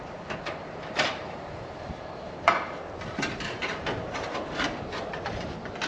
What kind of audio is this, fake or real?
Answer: fake